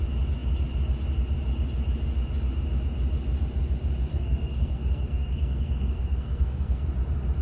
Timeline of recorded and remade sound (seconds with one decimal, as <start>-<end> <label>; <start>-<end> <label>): 0.0-4.1 recorded; 4.1-6.9 remade; 6.9-7.4 recorded

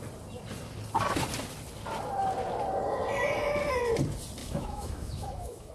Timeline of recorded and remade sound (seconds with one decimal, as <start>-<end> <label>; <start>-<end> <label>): 0.0-4.4 recorded; 4.4-5.7 remade

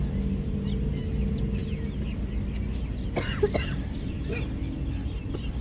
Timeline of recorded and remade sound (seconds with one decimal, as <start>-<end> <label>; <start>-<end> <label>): 0.0-5.6 recorded

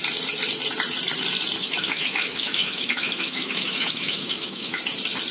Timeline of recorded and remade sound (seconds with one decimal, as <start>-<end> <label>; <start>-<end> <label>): 0.0-1.6 recorded; 1.6-4.8 remade; 4.8-5.3 recorded

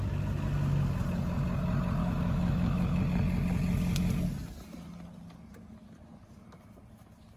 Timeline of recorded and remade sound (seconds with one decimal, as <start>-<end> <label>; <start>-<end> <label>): 0.0-2.0 recorded; 2.0-3.0 remade; 3.0-7.4 recorded

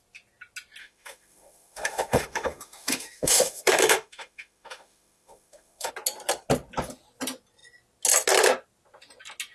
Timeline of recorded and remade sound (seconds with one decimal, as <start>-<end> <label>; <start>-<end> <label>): 0.0-0.8 recorded; 0.8-5.9 remade; 5.9-9.5 recorded